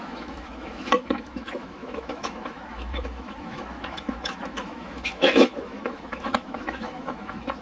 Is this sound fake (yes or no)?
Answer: yes